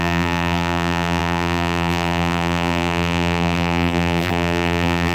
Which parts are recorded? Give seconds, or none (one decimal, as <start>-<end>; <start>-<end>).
none